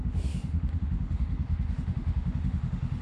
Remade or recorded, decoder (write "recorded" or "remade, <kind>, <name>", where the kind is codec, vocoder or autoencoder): remade, autoencoder, DAC-VAE